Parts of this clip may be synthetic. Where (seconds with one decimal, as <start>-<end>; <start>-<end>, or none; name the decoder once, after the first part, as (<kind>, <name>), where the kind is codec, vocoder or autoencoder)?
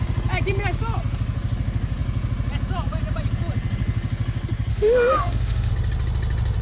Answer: 4.7-5.7 (autoencoder, DAC-VAE)